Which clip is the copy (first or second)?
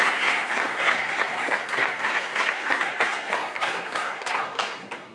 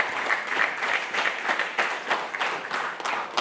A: first